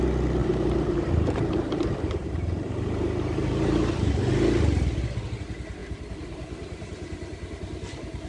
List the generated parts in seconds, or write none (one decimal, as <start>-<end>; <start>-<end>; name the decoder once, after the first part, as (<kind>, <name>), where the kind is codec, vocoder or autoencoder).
0.4-4.1 (vocoder, BigVGAN v2); 5.8-8.3

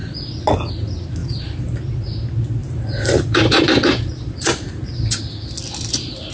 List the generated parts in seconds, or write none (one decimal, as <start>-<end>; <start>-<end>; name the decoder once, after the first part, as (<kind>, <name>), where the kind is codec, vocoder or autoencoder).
1.2-1.8 (vocoder, BigVGAN v2); 2.6-5.2

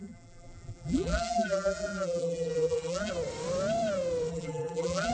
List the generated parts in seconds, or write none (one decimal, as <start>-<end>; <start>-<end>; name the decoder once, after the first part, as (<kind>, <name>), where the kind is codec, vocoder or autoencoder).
0.0-3.1 (vocoder, BigVGAN v2); 4.3-5.1

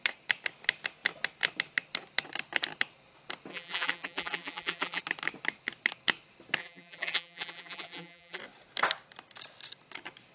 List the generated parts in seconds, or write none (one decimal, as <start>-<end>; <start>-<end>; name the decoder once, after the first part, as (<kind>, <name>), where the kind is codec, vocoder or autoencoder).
3.5-5.0 (vocoder, BigVGAN v2); 6.6-8.4